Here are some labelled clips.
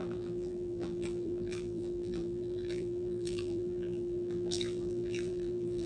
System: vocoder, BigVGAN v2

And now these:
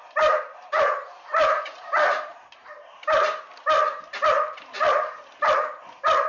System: vocoder, BigVGAN v2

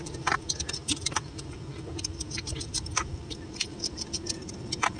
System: vocoder, BigVGAN v2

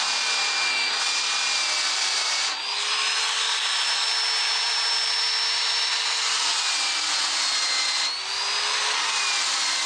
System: none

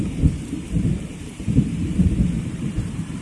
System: vocoder, BigVGAN v2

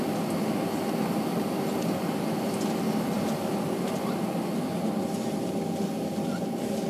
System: none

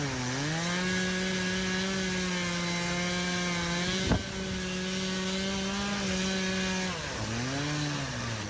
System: none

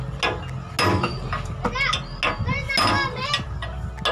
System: none